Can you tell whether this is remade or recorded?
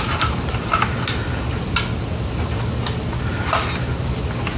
recorded